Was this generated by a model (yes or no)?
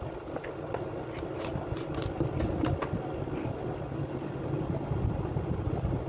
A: no